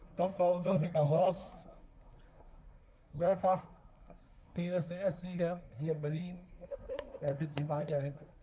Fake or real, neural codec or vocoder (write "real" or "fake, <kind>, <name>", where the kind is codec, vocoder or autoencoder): fake, codec, SNAC